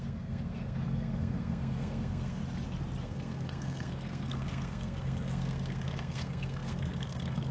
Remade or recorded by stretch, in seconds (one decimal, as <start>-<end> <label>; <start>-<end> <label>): 0.0-2.4 remade; 2.4-3.0 recorded; 3.0-7.5 remade